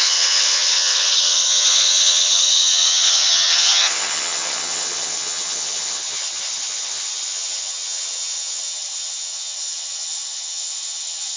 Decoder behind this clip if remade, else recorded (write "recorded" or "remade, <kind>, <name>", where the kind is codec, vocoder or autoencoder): remade, vocoder, HiFi-GAN